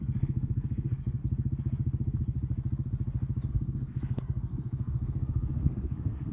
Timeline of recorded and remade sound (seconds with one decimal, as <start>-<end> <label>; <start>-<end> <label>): 0.0-1.2 remade; 1.2-3.5 recorded; 3.5-6.3 remade